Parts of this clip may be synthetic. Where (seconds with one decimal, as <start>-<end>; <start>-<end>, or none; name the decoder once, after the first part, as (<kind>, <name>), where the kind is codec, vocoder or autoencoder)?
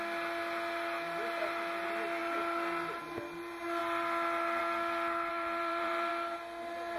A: 5.3-6.1 (vocoder, BigVGAN v2)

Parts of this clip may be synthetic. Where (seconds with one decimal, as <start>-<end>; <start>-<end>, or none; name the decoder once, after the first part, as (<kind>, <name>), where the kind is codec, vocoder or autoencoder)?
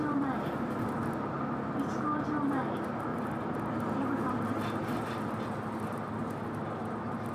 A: 3.1-4.5 (vocoder, BigVGAN v2)